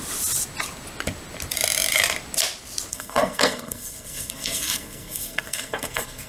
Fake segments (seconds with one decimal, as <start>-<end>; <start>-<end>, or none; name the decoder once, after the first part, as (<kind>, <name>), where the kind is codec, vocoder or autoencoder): 2.9-6.3 (codec, SNAC)